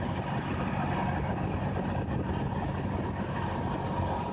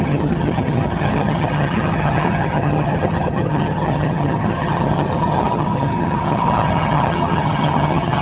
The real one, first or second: first